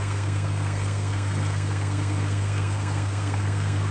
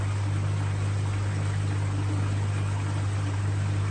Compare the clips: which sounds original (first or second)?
second